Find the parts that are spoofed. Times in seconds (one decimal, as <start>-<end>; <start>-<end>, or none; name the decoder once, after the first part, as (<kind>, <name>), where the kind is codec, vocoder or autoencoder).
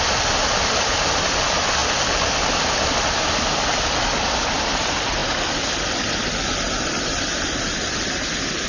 none